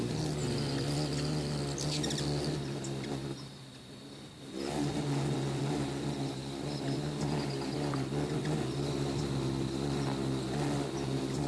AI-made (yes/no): no